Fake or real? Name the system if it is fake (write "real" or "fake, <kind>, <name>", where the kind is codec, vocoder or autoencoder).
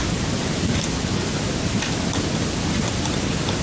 real